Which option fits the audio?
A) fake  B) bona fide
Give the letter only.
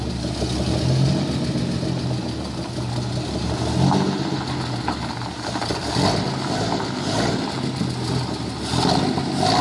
B